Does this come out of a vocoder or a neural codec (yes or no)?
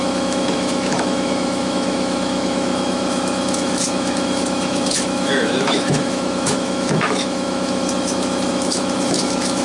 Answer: yes